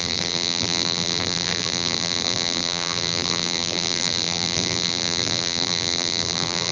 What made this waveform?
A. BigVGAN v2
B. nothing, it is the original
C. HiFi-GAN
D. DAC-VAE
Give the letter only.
A